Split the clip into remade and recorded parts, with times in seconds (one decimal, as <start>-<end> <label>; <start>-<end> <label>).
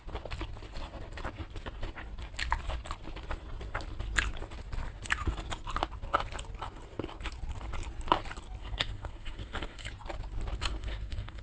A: 0.0-8.6 recorded; 8.6-9.9 remade; 9.9-10.6 recorded; 10.6-11.4 remade